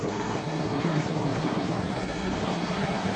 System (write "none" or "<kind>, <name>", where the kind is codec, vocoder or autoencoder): codec, SNAC